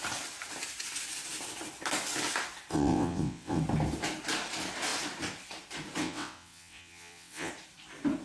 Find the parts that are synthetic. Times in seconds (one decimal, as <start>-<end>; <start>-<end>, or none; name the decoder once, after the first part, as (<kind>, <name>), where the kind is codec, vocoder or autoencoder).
2.7-3.6 (vocoder, WaveNeXt); 6.0-7.5